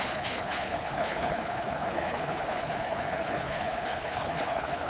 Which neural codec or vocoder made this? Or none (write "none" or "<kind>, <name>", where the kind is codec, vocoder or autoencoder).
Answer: codec, HILCodec